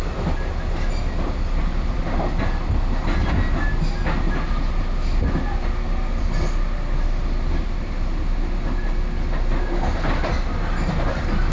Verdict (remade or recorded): recorded